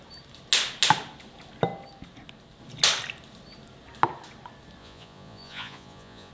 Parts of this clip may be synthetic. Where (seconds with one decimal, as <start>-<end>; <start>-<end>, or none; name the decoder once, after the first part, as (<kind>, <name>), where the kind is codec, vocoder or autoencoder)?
4.8-6.3 (vocoder, Vocos)